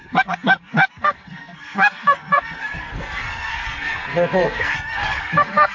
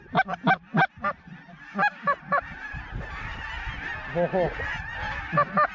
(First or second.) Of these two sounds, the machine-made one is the first